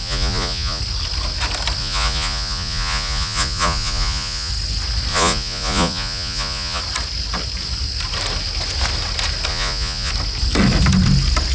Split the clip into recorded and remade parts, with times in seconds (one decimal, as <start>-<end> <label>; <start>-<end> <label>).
0.0-0.8 remade; 0.8-1.8 recorded; 1.8-4.5 remade; 4.5-5.1 recorded; 5.1-6.8 remade; 6.8-9.5 recorded; 9.5-10.1 remade; 10.1-11.5 recorded

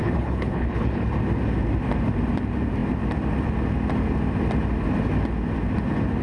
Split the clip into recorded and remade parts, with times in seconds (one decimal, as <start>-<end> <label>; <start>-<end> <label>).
0.0-1.1 remade; 1.1-6.2 recorded

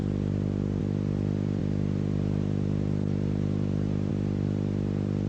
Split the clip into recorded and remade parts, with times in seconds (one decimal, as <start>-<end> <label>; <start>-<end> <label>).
0.0-0.8 remade; 0.8-1.6 recorded; 1.6-4.1 remade; 4.1-5.3 recorded

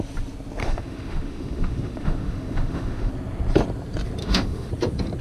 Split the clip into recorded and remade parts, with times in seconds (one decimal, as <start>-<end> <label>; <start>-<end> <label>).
0.0-0.6 recorded; 0.6-3.1 remade; 3.1-4.2 recorded; 4.2-4.7 remade; 4.7-5.2 recorded